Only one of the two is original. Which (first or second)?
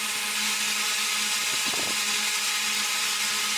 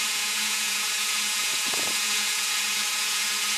first